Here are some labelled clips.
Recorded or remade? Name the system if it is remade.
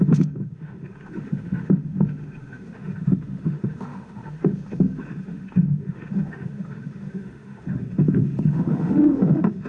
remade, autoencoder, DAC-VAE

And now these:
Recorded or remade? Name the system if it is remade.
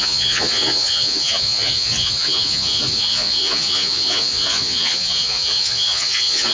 remade, vocoder, Vocos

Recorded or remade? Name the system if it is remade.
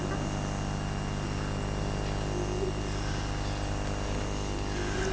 recorded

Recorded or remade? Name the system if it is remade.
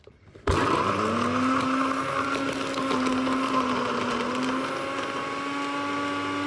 recorded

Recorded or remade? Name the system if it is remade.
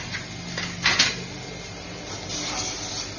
recorded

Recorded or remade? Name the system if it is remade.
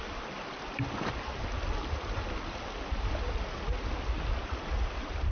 recorded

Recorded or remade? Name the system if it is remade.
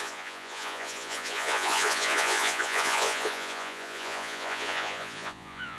remade, vocoder, Vocos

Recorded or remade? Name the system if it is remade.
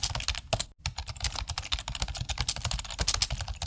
recorded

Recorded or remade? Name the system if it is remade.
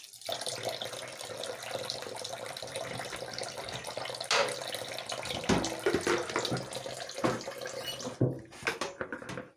recorded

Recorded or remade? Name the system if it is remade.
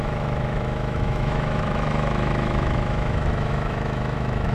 remade, autoencoder, DAC-VAE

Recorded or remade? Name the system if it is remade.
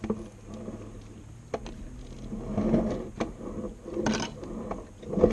recorded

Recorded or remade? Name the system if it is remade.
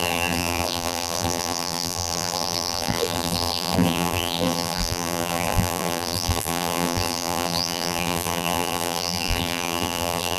remade, vocoder, BigVGAN v2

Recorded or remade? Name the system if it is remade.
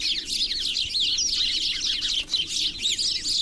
recorded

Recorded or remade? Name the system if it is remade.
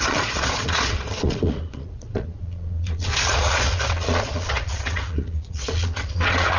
remade, vocoder, Vocos